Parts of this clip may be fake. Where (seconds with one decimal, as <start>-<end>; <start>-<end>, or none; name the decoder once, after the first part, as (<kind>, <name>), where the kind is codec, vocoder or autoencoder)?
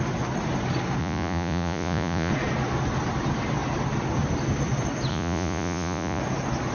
1.0-2.3 (vocoder, Vocos); 5.1-6.2